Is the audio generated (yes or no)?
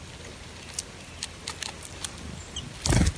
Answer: no